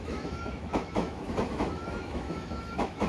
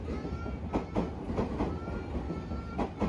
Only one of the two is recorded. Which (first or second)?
second